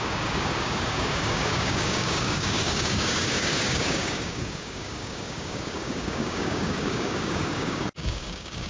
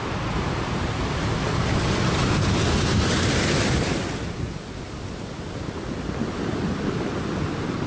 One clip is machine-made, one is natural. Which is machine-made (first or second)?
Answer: first